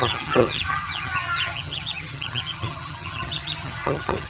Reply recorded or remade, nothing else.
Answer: remade